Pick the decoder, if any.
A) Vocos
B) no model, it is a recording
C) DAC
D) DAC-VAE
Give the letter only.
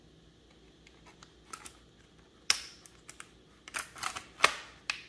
B